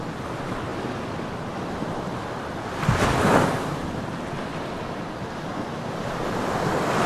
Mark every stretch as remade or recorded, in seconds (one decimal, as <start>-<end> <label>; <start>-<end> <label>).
0.0-7.1 recorded